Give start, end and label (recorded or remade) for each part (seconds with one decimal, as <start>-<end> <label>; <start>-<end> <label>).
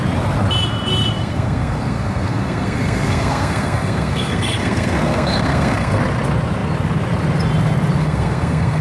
0.0-1.2 recorded; 1.2-6.0 remade; 6.0-8.0 recorded; 8.0-8.8 remade